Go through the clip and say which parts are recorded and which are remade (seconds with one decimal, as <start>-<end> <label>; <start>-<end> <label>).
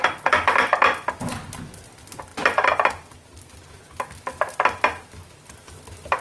0.0-6.2 recorded